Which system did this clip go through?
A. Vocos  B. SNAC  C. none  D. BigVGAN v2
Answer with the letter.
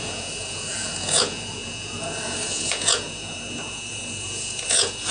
A